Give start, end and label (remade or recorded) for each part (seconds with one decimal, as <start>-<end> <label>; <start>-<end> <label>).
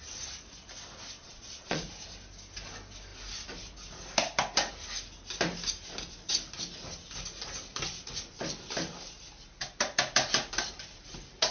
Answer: 0.0-1.2 recorded; 1.2-1.9 remade; 1.9-11.5 recorded